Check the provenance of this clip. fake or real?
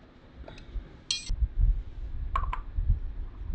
real